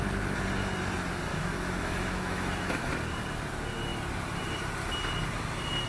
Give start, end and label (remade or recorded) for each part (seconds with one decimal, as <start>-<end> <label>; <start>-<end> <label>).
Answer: 0.0-1.3 recorded; 1.3-2.9 remade; 2.9-5.9 recorded